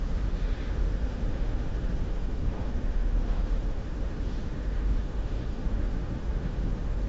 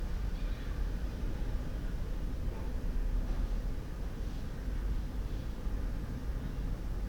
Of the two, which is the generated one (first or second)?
first